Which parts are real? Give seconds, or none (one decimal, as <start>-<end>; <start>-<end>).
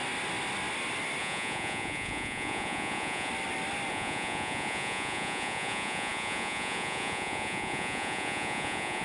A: 0.0-1.2; 3.3-3.9